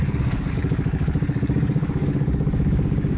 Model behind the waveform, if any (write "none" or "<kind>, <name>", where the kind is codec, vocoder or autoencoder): codec, DAC